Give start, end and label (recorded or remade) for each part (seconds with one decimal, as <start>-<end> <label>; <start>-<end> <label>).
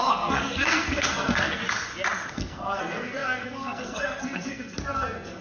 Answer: 0.0-1.6 remade; 1.6-2.3 recorded; 2.3-5.4 remade